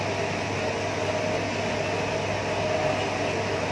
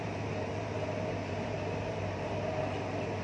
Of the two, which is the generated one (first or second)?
second